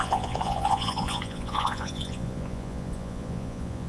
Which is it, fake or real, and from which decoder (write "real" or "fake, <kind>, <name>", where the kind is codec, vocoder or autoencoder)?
fake, vocoder, Vocos